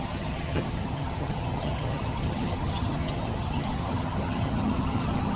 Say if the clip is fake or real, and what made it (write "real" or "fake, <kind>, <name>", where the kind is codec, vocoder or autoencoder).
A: fake, vocoder, HiFi-GAN